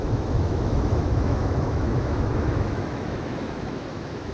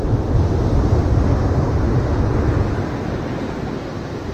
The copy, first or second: first